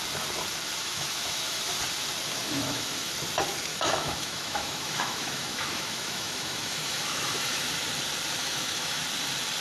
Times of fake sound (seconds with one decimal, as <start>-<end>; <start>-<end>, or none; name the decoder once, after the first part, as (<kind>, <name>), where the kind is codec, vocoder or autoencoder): 0.8-1.6 (autoencoder, DAC-VAE); 2.4-3.1; 3.7-7.7; 8.4-9.0

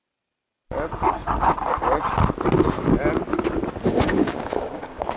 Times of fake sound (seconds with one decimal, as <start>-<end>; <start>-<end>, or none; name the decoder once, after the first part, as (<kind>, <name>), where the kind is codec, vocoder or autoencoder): 3.9-5.2 (codec, DAC)

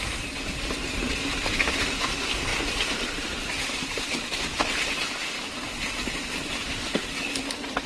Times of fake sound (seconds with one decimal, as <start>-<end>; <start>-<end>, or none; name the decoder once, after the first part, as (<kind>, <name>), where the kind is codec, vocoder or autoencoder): none

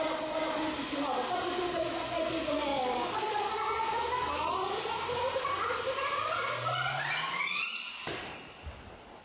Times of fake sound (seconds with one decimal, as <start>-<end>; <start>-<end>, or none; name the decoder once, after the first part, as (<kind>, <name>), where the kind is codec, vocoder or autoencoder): 2.7-3.4 (codec, DAC)

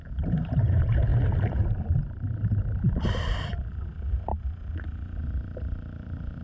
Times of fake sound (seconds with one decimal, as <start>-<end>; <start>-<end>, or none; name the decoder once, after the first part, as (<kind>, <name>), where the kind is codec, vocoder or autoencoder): 0.0-6.4 (vocoder, BigVGAN v2)

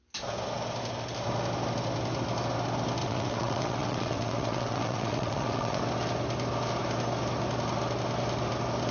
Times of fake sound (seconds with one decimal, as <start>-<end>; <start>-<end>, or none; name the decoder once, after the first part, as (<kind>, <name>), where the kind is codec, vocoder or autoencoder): 3.0-5.8 (vocoder, WaveNeXt)